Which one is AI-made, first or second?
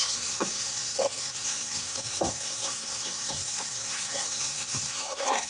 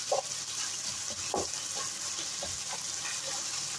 first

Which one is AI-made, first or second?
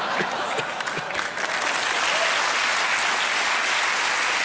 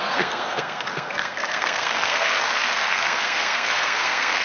second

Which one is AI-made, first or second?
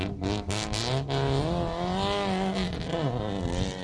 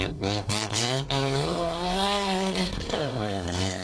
second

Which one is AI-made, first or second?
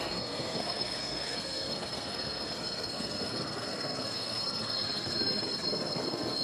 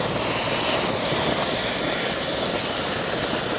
first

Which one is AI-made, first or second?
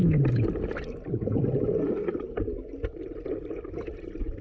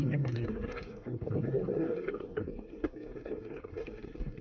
second